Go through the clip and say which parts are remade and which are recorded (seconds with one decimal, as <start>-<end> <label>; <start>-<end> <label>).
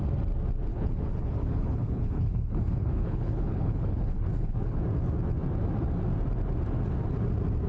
0.0-0.7 recorded; 0.7-4.8 remade; 4.8-7.7 recorded